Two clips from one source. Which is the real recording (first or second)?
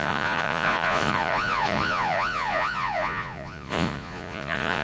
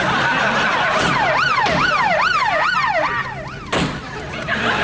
second